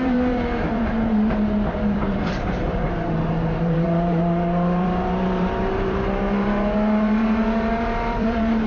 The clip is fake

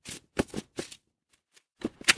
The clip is fake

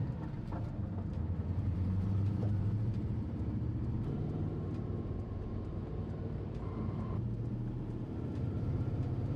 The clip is fake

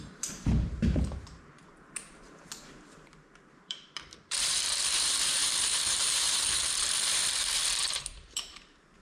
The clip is fake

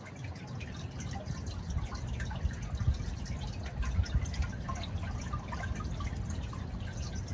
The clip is real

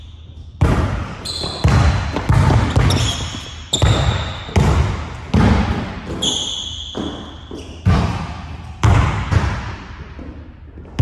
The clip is real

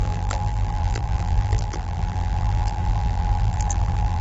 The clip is fake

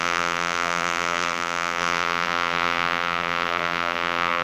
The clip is fake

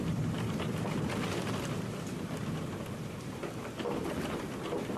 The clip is real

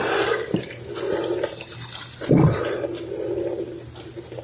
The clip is real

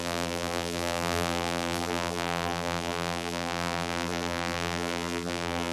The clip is fake